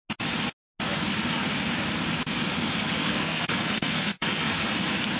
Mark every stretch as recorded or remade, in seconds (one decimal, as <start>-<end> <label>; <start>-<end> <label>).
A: 0.0-3.0 recorded; 3.0-4.6 remade; 4.6-5.2 recorded

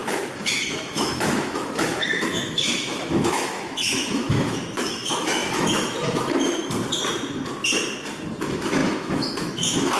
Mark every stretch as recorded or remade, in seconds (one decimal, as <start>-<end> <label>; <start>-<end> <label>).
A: 0.0-6.6 remade; 6.6-8.4 recorded; 8.4-10.0 remade

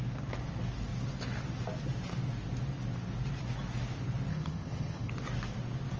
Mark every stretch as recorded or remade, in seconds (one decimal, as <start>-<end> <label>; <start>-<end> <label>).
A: 0.0-4.3 recorded; 4.3-5.1 remade; 5.1-6.0 recorded

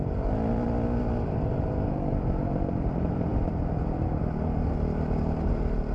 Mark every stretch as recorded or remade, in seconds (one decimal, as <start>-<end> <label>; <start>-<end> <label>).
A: 0.0-5.9 recorded

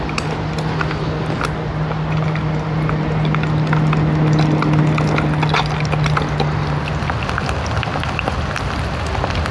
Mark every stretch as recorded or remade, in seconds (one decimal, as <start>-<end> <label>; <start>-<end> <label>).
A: 0.0-9.5 recorded